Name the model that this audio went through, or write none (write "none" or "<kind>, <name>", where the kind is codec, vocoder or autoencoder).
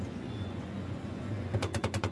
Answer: vocoder, Vocos